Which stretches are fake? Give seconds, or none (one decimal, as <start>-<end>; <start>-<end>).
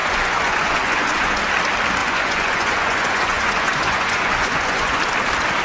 0.0-1.4; 2.0-5.0